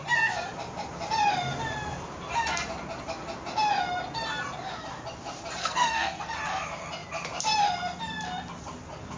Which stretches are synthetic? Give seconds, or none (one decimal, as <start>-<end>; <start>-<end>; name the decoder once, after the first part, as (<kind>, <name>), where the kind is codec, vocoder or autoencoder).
5.6-6.3 (codec, SNAC)